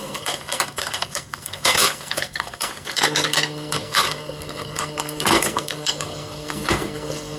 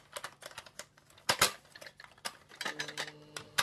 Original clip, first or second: second